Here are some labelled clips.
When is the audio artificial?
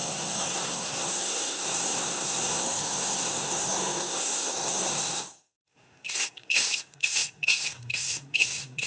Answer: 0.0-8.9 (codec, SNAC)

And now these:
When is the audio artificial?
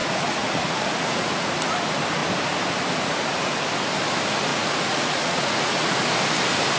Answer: 0.0-1.5 (vocoder, Vocos); 4.5-6.1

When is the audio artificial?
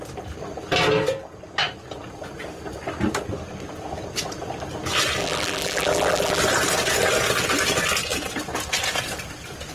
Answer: 5.2-6.4 (vocoder, BigVGAN v2)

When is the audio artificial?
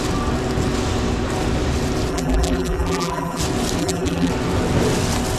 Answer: 2.1-3.4 (vocoder, BigVGAN v2); 3.8-4.3